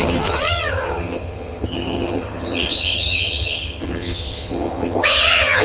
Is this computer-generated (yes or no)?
yes